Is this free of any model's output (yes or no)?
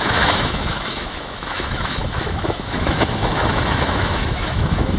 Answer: no